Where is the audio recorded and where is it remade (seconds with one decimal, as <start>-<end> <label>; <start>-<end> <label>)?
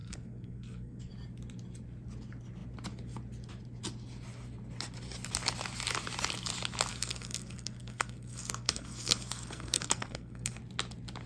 0.0-1.1 remade; 1.1-6.9 recorded; 6.9-10.6 remade; 10.6-11.3 recorded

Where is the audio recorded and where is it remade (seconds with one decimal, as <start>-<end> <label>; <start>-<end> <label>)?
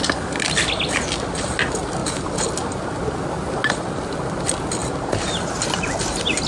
0.0-6.5 recorded